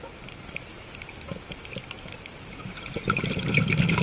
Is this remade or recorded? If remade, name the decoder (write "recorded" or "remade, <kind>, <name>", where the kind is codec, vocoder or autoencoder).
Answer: recorded